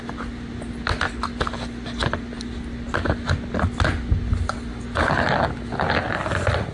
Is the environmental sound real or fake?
real